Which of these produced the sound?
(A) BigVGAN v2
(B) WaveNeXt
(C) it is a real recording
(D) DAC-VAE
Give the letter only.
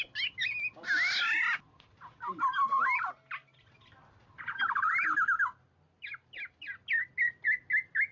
C